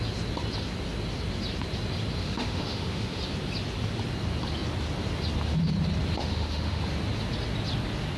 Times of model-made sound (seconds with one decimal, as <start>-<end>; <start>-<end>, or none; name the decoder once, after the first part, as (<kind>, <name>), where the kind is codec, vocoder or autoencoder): 2.2-3.2 (autoencoder, DAC-VAE); 6.2-6.8